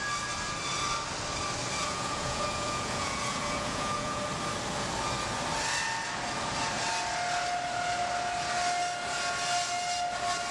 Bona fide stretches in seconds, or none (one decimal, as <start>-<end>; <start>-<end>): 0.0-1.8; 4.2-10.5